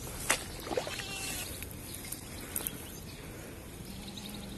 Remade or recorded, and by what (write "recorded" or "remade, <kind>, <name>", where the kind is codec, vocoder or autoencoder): recorded